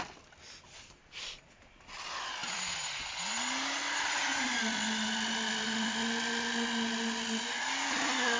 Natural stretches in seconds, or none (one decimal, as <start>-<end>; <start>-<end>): 0.0-8.4